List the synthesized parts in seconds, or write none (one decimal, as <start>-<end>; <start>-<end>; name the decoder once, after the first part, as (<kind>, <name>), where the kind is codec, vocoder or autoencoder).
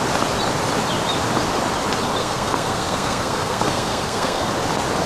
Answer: 2.2-4.5 (codec, SNAC)